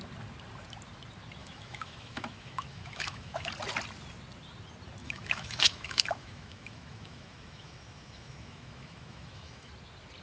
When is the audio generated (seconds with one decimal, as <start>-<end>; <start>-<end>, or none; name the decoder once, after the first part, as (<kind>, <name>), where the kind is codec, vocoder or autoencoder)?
1.4-3.5 (autoencoder, DAC-VAE); 5.0-9.7